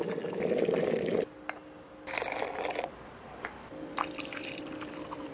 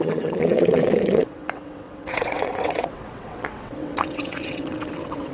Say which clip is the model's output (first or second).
second